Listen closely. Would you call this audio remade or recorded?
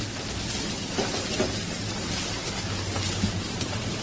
recorded